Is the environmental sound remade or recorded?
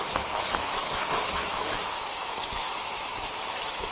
remade